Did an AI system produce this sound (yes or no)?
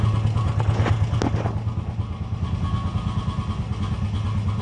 no